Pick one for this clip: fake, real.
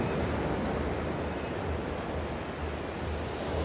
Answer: real